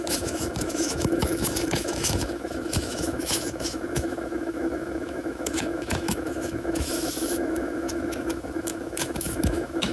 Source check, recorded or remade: remade